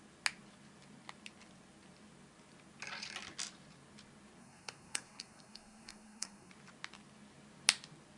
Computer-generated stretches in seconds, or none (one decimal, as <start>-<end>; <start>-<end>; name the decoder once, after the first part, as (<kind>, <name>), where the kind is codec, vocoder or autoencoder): 4.4-6.5 (codec, SNAC)